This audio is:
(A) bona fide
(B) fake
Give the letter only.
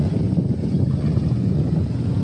B